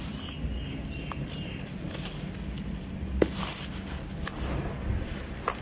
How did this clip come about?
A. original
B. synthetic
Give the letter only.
A